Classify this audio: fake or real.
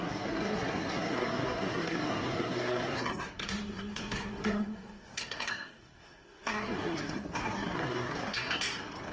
fake